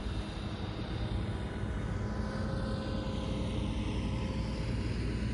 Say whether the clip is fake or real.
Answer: real